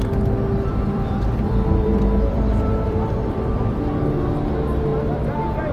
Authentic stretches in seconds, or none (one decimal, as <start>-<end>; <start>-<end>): 0.0-0.7; 3.8-5.7